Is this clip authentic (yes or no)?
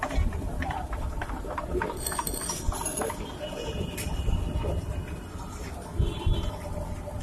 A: yes